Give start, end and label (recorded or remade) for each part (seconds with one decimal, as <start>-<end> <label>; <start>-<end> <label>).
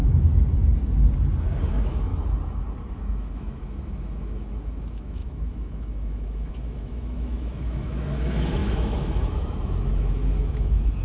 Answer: 0.0-1.7 recorded; 1.7-2.1 remade; 2.1-2.9 recorded; 2.9-11.0 remade